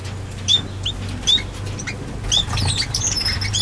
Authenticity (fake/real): real